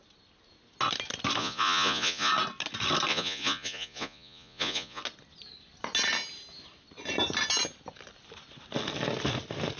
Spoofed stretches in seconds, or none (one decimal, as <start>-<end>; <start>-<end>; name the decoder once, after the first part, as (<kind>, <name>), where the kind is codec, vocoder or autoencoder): 1.4-2.3 (vocoder, Vocos); 3.1-5.0